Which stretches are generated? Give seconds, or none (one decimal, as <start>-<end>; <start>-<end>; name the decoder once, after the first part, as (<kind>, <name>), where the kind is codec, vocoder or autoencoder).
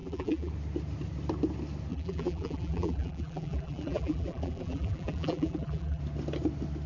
0.0-0.5 (vocoder, BigVGAN v2); 1.9-6.0